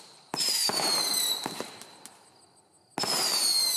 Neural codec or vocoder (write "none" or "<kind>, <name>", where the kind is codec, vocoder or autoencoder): none